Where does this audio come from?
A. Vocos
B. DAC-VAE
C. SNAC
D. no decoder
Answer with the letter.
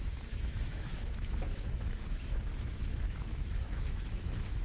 B